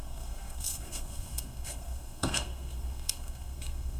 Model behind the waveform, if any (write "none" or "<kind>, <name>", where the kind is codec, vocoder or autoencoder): codec, SNAC